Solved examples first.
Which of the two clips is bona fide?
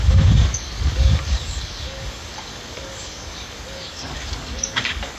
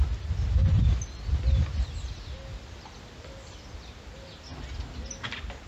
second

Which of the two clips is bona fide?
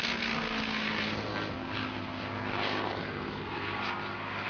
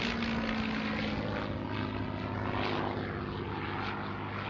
second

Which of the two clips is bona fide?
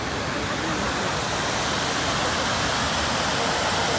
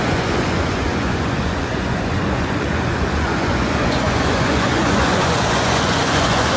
first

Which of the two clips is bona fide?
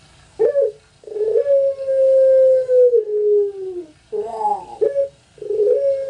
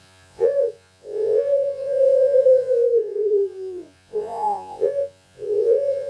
first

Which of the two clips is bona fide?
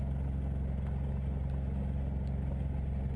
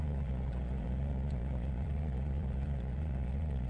first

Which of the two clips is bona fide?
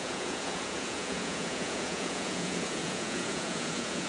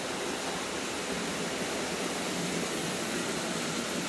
second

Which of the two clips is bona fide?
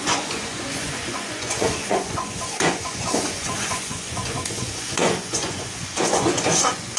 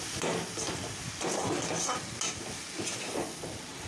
second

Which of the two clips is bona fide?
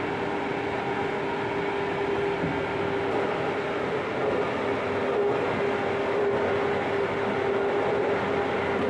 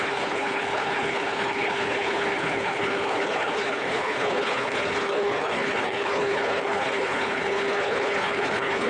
first